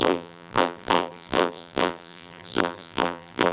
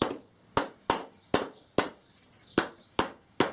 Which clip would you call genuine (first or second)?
second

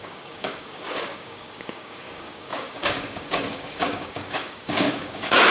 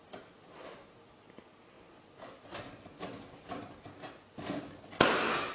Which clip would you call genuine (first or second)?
second